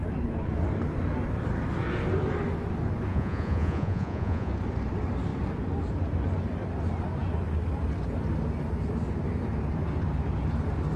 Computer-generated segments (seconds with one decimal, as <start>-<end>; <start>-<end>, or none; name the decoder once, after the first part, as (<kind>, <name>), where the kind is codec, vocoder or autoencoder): 3.1-4.5 (vocoder, Vocos)